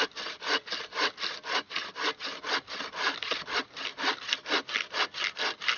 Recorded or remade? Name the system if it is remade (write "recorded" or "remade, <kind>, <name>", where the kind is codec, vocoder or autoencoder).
recorded